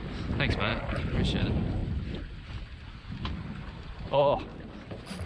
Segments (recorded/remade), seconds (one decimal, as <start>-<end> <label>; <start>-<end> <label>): 0.0-5.3 recorded